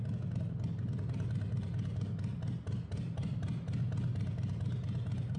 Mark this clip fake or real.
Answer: real